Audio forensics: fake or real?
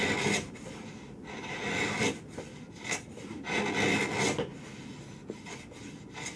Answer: real